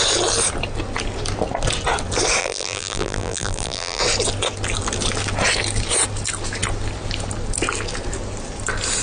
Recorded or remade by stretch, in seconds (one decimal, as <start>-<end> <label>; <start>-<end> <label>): 0.0-2.4 recorded; 2.4-4.0 remade; 4.0-9.0 recorded